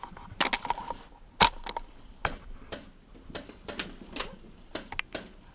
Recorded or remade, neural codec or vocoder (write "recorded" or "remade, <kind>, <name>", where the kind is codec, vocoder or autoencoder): recorded